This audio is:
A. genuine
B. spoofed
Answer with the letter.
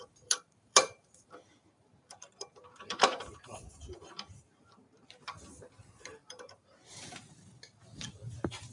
B